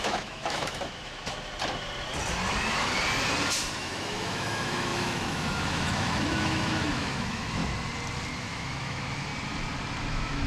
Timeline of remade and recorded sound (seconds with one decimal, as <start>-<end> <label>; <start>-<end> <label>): 0.0-1.2 remade; 1.2-3.8 recorded; 3.8-7.6 remade; 7.6-8.4 recorded; 8.4-9.3 remade; 9.3-10.1 recorded; 10.1-10.5 remade